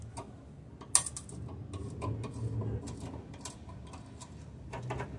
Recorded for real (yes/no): yes